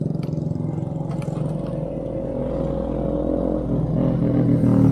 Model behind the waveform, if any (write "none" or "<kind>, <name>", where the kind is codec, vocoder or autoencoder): none